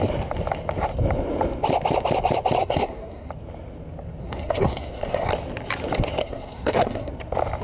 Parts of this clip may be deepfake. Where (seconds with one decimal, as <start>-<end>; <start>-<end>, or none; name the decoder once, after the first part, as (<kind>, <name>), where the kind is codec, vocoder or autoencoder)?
2.6-3.3 (codec, SNAC); 4.2-5.3; 6.2-7.1